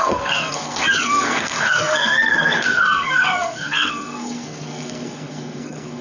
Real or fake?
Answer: fake